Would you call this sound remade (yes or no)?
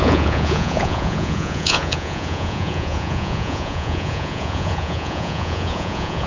yes